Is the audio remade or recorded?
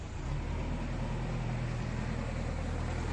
recorded